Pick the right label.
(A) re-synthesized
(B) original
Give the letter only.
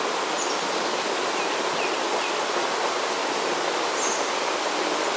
B